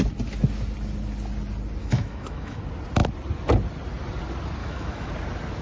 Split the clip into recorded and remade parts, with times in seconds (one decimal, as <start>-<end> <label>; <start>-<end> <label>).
0.0-1.8 recorded; 1.8-2.6 remade; 2.6-4.6 recorded; 4.6-5.1 remade; 5.1-5.6 recorded

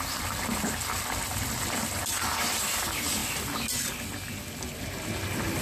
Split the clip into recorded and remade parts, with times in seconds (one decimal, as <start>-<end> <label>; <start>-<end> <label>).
0.0-5.6 recorded

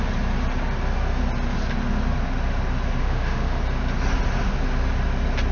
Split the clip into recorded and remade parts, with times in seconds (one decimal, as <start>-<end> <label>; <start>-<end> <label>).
0.0-3.0 recorded; 3.0-3.6 remade; 3.6-5.5 recorded

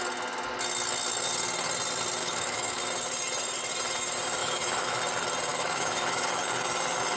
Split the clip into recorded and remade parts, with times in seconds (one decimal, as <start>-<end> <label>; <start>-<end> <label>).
0.0-2.2 recorded; 2.2-2.8 remade; 2.8-4.4 recorded; 4.4-5.0 remade; 5.0-5.5 recorded; 5.5-6.4 remade; 6.4-7.2 recorded

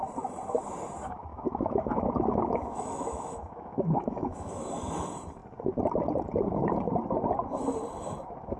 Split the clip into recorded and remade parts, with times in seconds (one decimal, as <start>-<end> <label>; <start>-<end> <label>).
0.0-1.3 recorded; 1.3-4.7 remade; 4.7-8.6 recorded

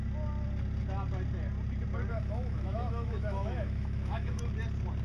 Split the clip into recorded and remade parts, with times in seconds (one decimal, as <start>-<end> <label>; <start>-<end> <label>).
0.0-2.1 recorded; 2.1-4.4 remade; 4.4-5.0 recorded

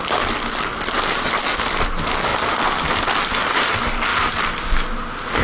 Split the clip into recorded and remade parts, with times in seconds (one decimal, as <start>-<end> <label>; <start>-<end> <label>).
0.0-5.4 recorded